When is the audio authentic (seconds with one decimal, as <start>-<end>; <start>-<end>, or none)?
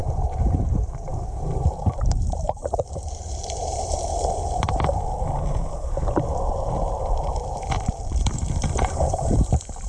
4.1-7.1